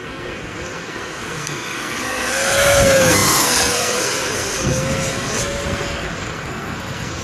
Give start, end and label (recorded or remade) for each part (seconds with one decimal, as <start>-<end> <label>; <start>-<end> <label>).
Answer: 0.0-7.2 remade